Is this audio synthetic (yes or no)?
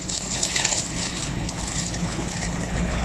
yes